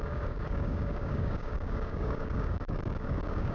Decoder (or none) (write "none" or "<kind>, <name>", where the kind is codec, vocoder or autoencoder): codec, DAC